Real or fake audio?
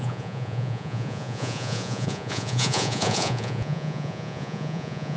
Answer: fake